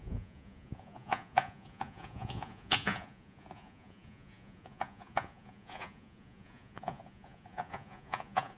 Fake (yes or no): yes